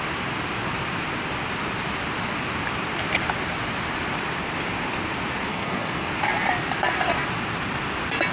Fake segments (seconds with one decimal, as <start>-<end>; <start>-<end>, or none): 5.5-6.1